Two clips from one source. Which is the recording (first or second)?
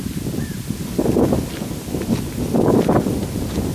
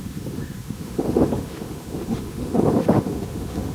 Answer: first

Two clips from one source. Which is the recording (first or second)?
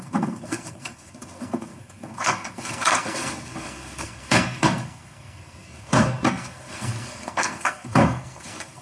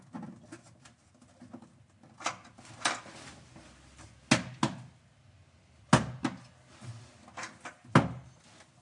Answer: second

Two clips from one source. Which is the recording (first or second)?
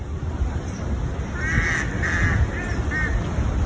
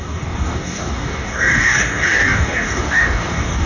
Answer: first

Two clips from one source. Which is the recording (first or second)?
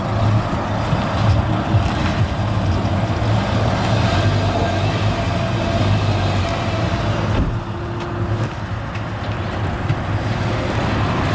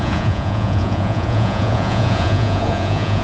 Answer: first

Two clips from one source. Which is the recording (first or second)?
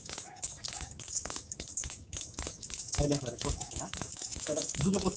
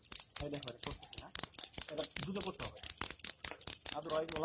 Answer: second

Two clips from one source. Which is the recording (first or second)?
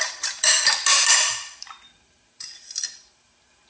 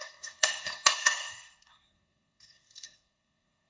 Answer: first